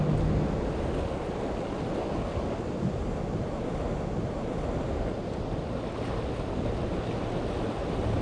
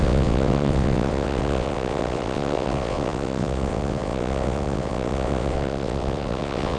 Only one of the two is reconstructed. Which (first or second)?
second